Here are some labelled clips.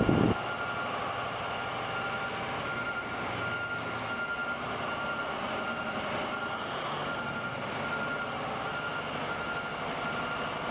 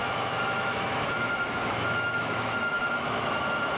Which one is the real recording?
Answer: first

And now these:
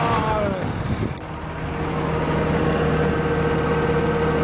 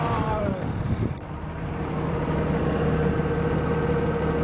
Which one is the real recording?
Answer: first